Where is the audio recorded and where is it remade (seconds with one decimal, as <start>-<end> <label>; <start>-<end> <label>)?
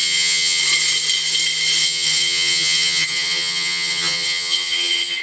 0.0-0.6 remade; 0.6-1.8 recorded; 1.8-5.2 remade